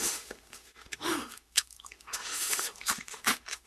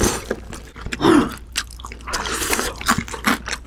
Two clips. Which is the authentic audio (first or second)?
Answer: second